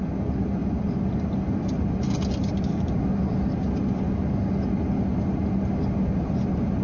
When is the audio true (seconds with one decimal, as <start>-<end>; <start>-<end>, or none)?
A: 0.0-6.8